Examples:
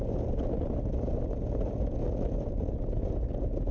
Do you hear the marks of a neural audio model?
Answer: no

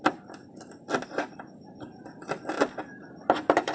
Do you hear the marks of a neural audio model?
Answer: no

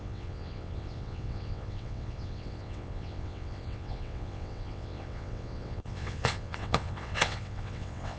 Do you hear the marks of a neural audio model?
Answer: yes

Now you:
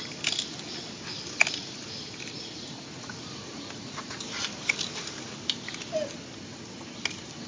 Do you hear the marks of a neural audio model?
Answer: no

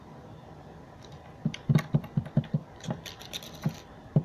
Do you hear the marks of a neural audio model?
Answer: no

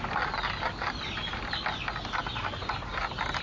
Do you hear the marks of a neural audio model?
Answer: no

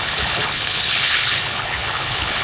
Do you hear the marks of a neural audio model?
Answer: yes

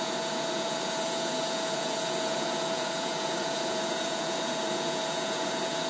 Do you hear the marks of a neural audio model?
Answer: yes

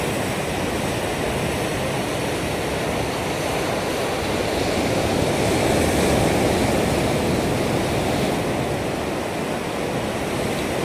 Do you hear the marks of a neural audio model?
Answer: no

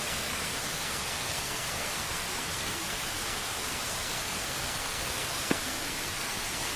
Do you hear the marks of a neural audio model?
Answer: yes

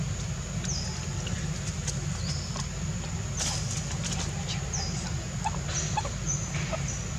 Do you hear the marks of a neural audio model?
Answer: no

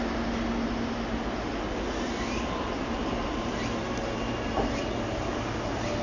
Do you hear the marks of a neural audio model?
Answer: no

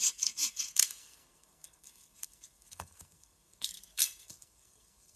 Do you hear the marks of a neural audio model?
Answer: yes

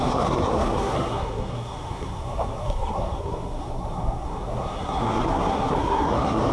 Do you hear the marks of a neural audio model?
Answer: yes